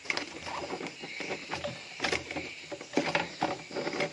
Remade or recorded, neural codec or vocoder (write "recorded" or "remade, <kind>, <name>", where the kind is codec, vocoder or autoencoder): recorded